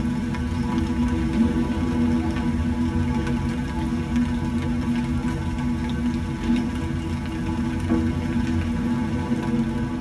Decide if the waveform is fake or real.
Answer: real